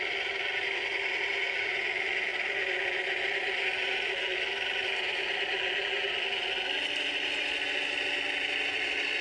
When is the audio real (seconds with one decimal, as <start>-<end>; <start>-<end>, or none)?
0.0-9.2